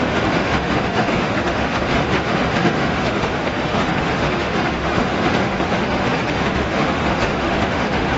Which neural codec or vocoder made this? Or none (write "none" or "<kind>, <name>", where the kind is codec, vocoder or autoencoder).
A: autoencoder, DAC-VAE